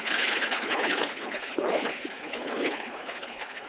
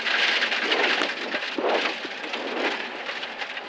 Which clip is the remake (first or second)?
first